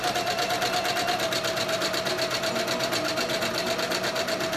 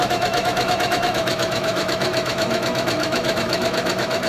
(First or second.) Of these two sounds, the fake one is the second